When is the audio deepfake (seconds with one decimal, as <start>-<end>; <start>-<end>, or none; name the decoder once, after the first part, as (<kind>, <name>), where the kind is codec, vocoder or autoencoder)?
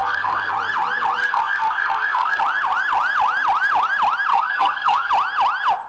0.0-0.5 (codec, SNAC); 1.2-2.4; 4.3-5.1